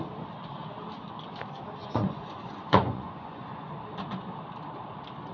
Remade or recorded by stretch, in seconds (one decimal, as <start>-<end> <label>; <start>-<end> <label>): 0.0-1.8 recorded; 1.8-3.7 remade; 3.7-5.3 recorded